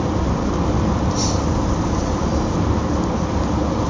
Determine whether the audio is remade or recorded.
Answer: recorded